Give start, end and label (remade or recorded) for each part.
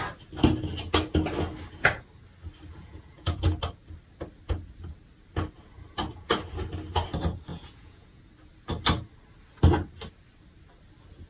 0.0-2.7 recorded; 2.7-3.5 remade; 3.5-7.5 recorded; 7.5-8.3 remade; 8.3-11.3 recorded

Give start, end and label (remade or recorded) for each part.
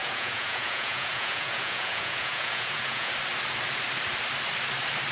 0.0-3.1 remade; 3.1-5.1 recorded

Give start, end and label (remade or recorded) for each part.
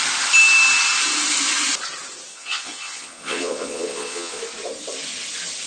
0.0-2.3 recorded; 2.3-4.4 remade; 4.4-5.7 recorded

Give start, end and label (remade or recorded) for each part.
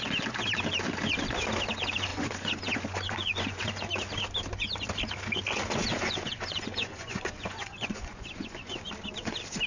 0.0-2.1 recorded; 2.1-3.6 remade; 3.6-5.9 recorded; 5.9-8.9 remade; 8.9-9.7 recorded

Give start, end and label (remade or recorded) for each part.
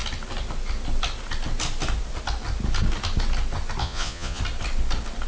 0.0-3.8 recorded; 3.8-4.4 remade; 4.4-5.3 recorded